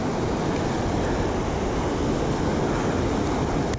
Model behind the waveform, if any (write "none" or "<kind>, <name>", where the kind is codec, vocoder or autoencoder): none